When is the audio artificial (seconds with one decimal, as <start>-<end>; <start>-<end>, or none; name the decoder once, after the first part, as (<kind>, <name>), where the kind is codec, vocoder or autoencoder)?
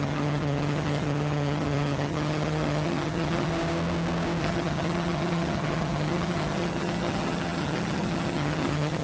0.0-3.5 (vocoder, HiFi-GAN); 4.4-9.0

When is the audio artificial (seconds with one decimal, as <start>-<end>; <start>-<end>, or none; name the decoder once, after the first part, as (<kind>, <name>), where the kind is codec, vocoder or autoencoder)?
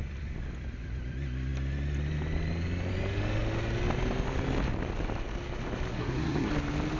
5.9-6.5 (codec, SNAC)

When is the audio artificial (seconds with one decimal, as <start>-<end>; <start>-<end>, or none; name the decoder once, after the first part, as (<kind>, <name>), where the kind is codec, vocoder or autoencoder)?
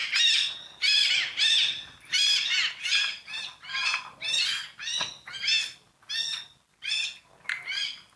none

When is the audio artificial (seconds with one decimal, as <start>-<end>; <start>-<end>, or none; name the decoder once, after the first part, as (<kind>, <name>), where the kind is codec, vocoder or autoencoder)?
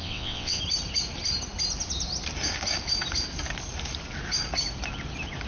0.0-0.6 (vocoder, WaveNeXt)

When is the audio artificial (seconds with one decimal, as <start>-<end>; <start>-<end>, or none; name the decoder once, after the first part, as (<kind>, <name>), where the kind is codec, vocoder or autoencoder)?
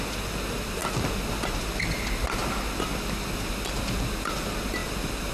4.8-5.3 (vocoder, BigVGAN v2)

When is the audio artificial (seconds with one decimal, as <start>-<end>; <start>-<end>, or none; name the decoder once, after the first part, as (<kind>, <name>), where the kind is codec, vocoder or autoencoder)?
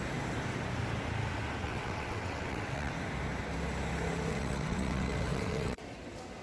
1.6-2.9 (vocoder, WaveNeXt); 4.3-5.8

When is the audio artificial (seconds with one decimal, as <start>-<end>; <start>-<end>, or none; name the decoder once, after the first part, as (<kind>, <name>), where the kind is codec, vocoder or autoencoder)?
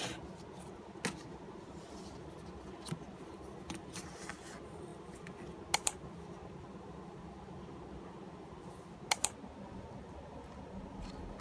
none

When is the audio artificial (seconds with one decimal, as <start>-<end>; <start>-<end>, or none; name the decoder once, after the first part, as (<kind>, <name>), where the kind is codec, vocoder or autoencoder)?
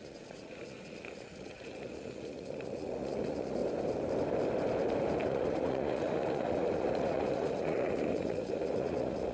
0.0-3.6 (vocoder, Vocos); 5.2-9.3